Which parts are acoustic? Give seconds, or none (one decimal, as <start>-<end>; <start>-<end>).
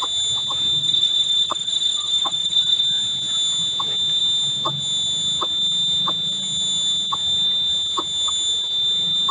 0.0-0.8; 2.8-9.3